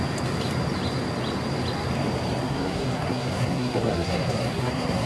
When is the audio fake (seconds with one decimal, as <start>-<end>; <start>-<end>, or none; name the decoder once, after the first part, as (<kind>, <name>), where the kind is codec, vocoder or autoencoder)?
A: 2.4-5.1 (codec, SNAC)